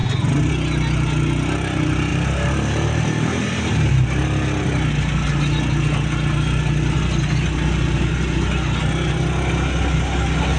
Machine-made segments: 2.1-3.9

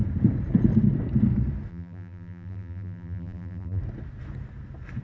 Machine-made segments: 1.7-3.8

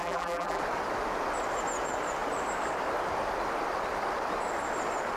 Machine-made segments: 0.0-0.6